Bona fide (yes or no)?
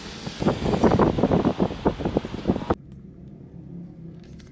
yes